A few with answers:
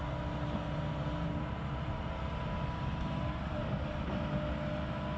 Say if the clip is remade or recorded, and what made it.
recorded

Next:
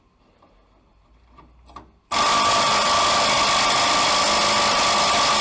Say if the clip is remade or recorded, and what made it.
recorded